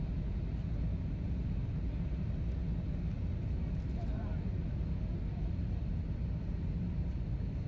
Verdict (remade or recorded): recorded